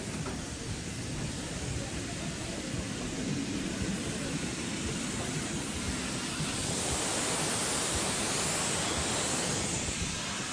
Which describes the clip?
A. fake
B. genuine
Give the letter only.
B